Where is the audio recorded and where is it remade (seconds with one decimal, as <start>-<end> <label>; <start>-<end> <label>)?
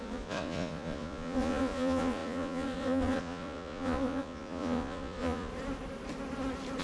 0.0-5.5 remade; 5.5-6.8 recorded